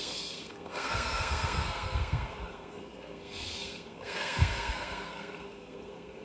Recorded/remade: remade